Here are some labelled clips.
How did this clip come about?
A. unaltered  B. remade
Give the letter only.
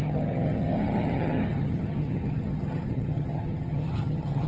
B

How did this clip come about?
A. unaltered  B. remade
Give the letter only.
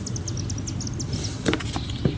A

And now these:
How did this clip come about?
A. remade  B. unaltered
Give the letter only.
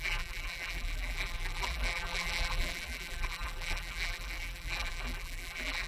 A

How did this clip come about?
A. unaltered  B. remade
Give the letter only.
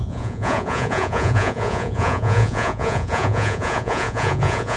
B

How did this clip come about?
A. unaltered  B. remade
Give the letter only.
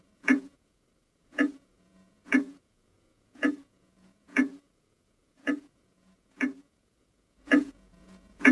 B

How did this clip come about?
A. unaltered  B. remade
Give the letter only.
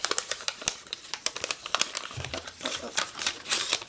B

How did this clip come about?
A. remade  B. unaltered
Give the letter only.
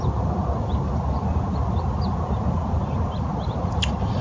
B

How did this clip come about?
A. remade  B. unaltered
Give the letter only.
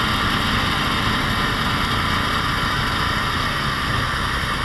B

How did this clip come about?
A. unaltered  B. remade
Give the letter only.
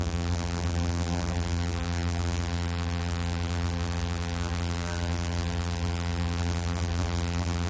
B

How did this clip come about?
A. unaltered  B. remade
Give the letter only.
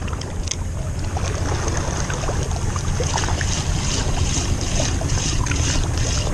A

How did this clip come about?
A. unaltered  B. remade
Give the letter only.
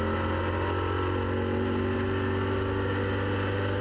A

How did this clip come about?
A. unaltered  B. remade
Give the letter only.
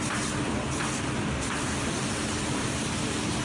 A